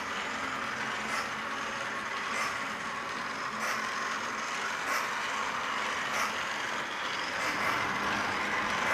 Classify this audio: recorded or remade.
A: recorded